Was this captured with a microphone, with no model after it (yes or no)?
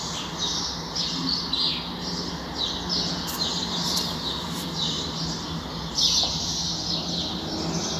yes